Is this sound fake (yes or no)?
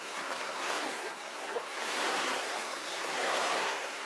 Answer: yes